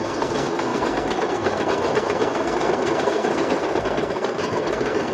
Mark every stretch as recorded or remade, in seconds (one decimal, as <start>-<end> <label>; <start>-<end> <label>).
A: 0.0-5.1 remade